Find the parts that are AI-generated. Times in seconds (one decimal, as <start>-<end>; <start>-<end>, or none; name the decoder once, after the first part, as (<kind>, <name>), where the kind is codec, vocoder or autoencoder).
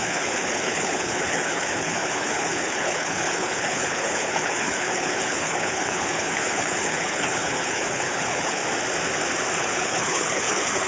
0.0-8.6 (codec, HILCodec); 9.6-10.9